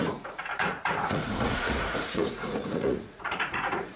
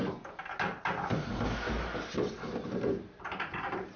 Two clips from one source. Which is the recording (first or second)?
second